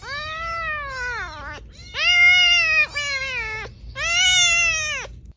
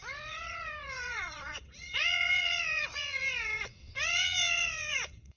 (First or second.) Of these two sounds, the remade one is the second